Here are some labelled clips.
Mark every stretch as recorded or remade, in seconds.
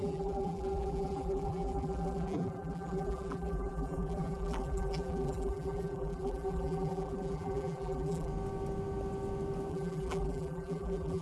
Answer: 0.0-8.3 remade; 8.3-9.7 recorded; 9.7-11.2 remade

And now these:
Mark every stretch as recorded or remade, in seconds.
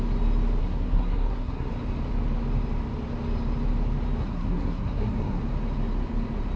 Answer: 0.0-0.6 recorded; 0.6-1.7 remade; 1.7-4.2 recorded; 4.2-5.4 remade; 5.4-6.6 recorded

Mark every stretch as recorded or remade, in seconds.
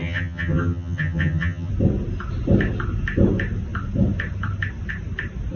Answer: 0.0-1.7 remade; 1.7-5.6 recorded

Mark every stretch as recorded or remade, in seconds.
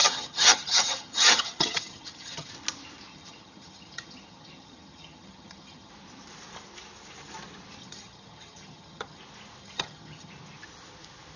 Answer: 0.0-2.5 remade; 2.5-3.1 recorded; 3.1-5.9 remade; 5.9-7.8 recorded; 7.8-9.2 remade; 9.2-9.6 recorded; 9.6-10.3 remade; 10.3-11.4 recorded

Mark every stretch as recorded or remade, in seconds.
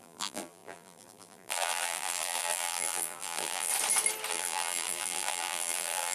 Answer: 0.0-3.7 remade; 3.7-4.3 recorded; 4.3-6.1 remade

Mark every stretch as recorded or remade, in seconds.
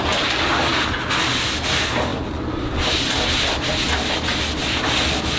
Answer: 0.0-5.4 recorded